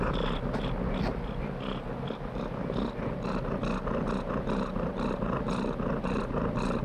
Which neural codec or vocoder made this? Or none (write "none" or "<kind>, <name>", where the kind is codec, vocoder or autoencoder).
none